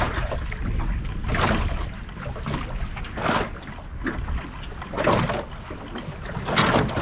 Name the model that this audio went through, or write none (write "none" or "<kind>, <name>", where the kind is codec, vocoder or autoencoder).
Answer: none